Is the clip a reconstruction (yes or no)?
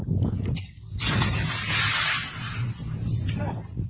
yes